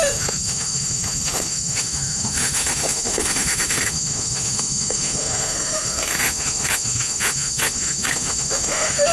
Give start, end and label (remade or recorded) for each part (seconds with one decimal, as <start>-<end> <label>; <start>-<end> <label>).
0.0-9.1 remade